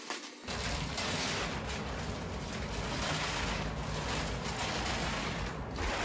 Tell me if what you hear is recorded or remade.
recorded